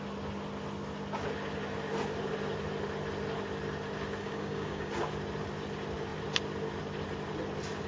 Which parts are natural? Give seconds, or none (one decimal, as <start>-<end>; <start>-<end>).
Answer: 0.0-4.2; 4.9-7.9